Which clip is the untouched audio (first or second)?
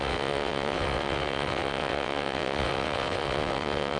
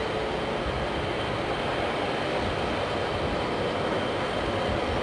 second